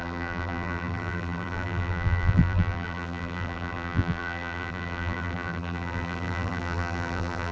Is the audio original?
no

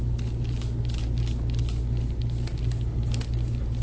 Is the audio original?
yes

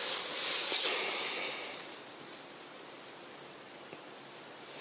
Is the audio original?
yes